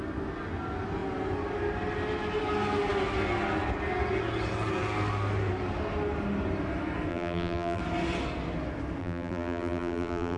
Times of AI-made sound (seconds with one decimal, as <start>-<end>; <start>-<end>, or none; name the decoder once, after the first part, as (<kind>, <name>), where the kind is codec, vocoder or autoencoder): 7.1-7.8 (vocoder, BigVGAN v2); 9.0-10.4